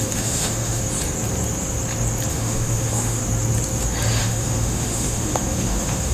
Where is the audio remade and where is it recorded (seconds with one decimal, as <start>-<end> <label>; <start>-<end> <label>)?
0.0-0.8 remade; 0.8-2.3 recorded; 2.3-3.2 remade; 3.2-4.2 recorded; 4.2-6.1 remade